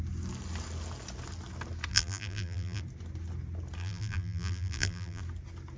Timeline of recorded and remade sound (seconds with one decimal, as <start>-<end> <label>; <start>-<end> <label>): 0.0-1.9 recorded; 1.9-2.8 remade; 2.8-3.8 recorded; 3.8-5.2 remade; 5.2-5.8 recorded